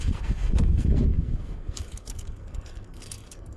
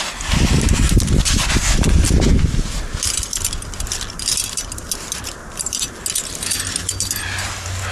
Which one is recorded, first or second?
second